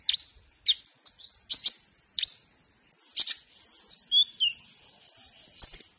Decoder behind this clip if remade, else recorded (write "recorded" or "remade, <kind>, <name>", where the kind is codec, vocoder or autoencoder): recorded